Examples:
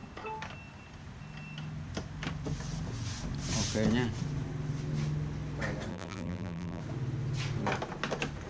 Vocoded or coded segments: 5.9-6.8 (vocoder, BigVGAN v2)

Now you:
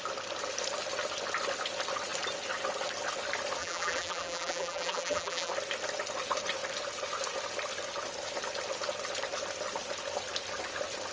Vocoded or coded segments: 3.6-5.5 (vocoder, BigVGAN v2)

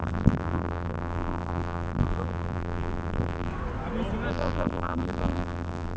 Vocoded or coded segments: 0.0-3.5 (vocoder, BigVGAN v2); 4.3-6.0

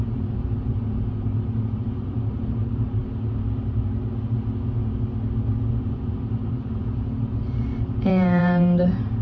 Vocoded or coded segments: 0.0-3.0 (vocoder, BigVGAN v2); 5.7-9.2

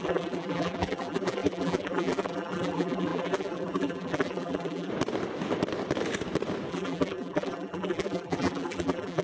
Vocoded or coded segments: 0.0-4.9 (vocoder, BigVGAN v2); 6.7-9.2

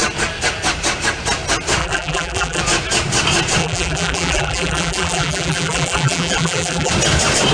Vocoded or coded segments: 1.8-2.6 (vocoder, BigVGAN v2); 3.6-6.9

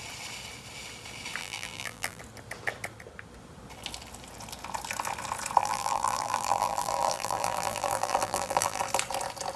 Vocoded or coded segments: 1.4-2.2 (vocoder, BigVGAN v2); 5.6-8.8

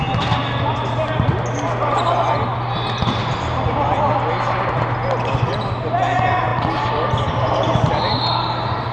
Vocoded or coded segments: none